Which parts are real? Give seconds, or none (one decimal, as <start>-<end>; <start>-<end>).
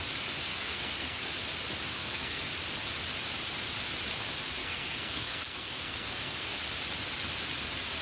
0.0-0.5; 1.2-1.9; 2.5-4.6; 6.6-8.0